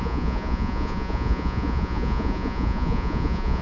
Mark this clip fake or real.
fake